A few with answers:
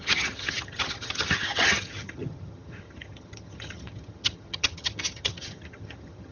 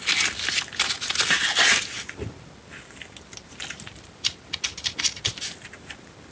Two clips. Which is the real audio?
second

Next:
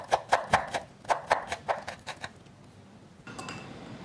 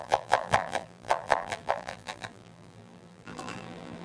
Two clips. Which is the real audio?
first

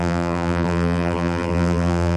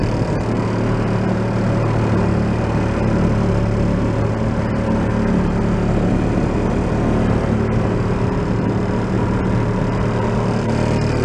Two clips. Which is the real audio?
second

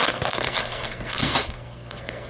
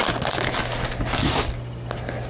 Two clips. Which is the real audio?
second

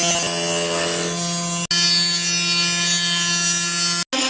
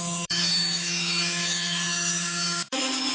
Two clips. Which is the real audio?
first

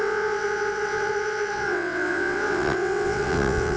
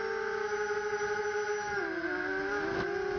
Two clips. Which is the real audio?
second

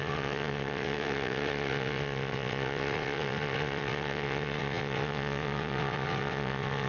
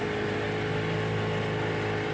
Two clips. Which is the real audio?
second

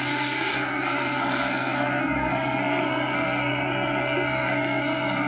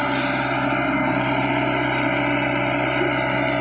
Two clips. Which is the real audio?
second